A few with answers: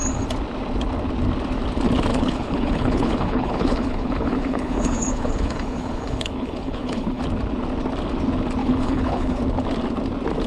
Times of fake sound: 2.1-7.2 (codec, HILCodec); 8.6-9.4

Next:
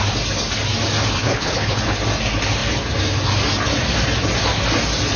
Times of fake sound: 1.2-1.8 (codec, HILCodec)

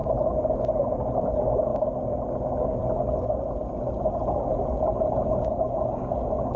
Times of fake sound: none